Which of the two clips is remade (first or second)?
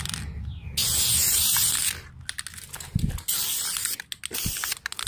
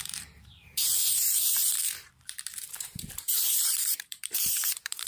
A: second